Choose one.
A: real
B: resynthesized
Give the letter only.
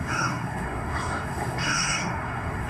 B